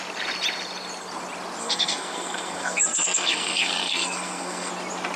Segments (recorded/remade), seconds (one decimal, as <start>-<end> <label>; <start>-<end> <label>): 0.0-1.6 recorded; 1.6-4.7 remade; 4.7-5.2 recorded